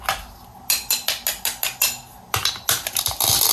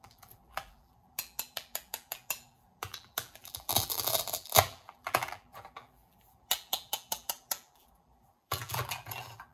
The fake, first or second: second